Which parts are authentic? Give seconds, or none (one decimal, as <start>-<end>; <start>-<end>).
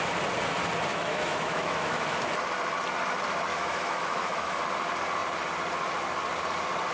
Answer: 0.0-0.9; 2.3-3.5; 4.6-6.9